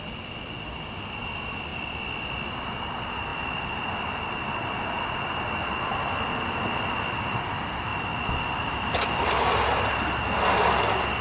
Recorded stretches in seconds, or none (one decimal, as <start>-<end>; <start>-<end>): 0.0-1.7; 2.3-3.3; 6.5-7.9; 9.2-11.2

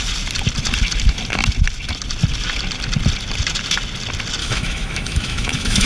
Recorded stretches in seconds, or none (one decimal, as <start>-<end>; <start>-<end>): 0.0-4.4